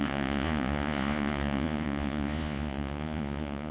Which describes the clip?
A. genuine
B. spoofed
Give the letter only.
B